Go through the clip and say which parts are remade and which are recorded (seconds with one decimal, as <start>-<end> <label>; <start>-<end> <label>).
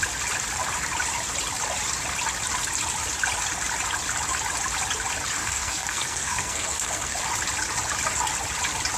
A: 0.0-5.4 recorded; 5.4-7.2 remade; 7.2-9.0 recorded